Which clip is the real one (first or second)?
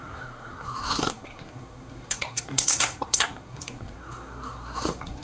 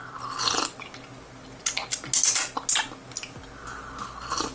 second